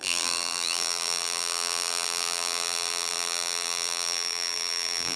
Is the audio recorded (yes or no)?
no